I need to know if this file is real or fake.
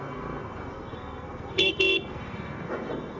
fake